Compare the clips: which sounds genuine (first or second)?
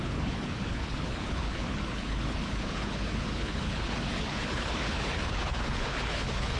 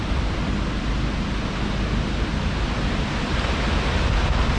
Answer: second